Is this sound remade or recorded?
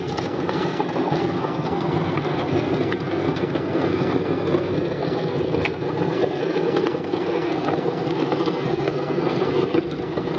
remade